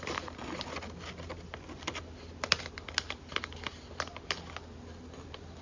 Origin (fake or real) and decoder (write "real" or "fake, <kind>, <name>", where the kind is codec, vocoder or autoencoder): real